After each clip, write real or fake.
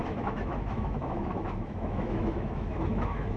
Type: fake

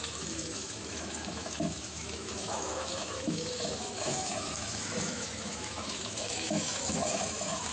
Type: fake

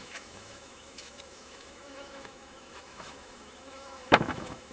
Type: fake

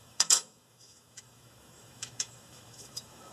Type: fake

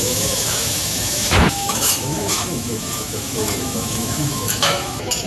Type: fake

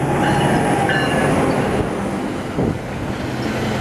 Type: real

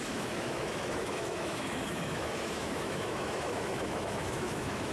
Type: fake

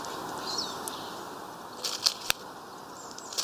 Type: real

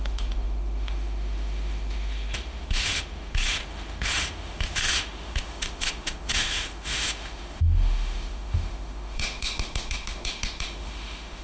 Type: fake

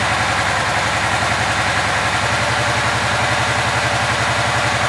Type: real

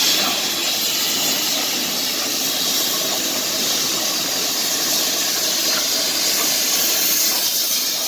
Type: real